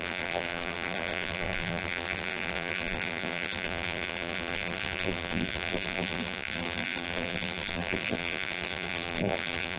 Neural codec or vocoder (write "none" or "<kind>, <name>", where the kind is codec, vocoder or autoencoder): vocoder, BigVGAN v2